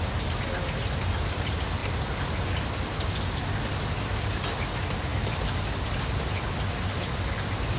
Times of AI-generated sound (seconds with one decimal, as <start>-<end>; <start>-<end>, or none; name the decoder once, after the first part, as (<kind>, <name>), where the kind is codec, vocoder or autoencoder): none